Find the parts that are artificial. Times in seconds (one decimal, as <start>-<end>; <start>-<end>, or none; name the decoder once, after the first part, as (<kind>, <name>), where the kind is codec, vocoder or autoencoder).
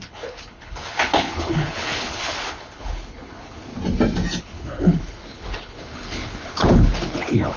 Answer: 0.0-3.7 (codec, HILCodec); 4.4-7.6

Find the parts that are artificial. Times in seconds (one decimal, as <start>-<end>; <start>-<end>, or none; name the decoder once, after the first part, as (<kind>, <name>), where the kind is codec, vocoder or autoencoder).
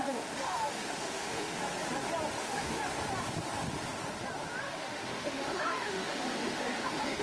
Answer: 0.0-1.6 (autoencoder, DAC-VAE); 2.4-2.8; 4.6-7.2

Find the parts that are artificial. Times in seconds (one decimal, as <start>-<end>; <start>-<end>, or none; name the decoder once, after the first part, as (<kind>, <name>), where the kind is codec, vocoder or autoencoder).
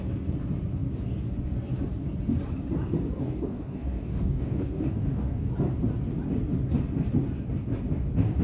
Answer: 3.2-5.5 (codec, DAC)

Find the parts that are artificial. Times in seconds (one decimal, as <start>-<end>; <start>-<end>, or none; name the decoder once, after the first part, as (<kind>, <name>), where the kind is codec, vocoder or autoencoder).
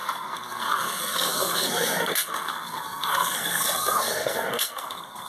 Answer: 0.0-5.3 (codec, SNAC)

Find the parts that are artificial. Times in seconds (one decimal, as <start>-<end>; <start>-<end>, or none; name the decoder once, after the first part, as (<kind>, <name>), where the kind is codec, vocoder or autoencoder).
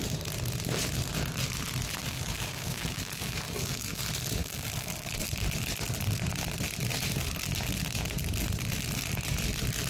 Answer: 2.0-4.0 (codec, DAC); 4.4-5.1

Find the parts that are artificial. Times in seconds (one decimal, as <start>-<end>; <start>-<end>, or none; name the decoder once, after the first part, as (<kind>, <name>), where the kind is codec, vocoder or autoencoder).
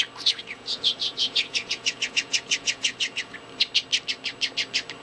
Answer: 0.4-3.4 (vocoder, Vocos)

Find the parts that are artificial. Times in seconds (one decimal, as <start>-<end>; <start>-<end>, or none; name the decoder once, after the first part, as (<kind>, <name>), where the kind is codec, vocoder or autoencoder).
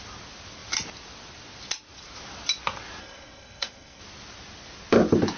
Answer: 3.0-4.0 (codec, SNAC)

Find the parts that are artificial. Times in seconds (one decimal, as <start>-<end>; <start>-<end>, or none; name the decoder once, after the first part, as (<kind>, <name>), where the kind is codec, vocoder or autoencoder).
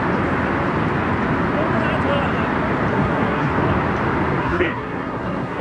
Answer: 2.9-3.5 (codec, SNAC); 4.4-5.6